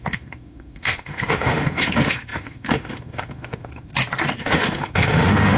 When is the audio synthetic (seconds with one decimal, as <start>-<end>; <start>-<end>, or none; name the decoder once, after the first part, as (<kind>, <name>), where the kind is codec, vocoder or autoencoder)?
0.0-3.9 (autoencoder, DAC-VAE); 4.4-5.6